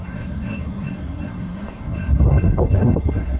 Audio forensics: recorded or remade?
remade